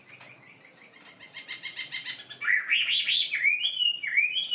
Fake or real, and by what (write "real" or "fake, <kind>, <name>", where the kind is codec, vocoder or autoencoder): real